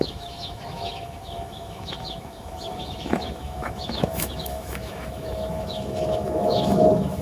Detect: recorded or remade remade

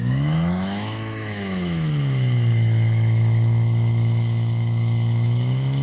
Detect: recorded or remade remade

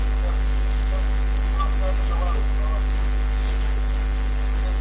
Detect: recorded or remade recorded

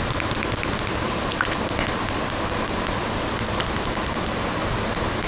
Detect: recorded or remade recorded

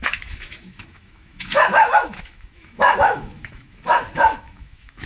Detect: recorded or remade remade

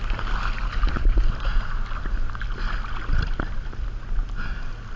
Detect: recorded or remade recorded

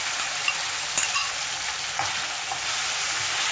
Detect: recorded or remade recorded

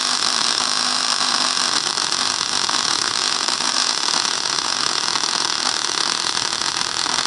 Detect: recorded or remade remade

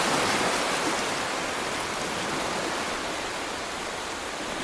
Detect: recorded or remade recorded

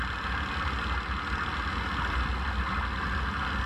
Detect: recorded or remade recorded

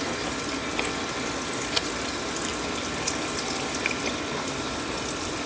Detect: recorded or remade recorded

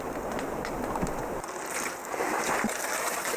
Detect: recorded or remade recorded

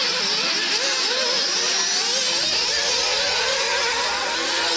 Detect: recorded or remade recorded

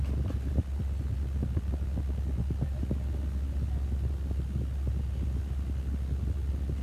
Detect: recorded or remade recorded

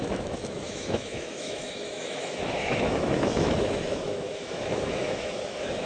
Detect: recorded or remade remade